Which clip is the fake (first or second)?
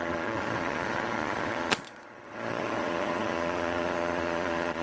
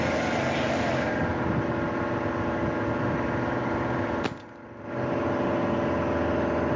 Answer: first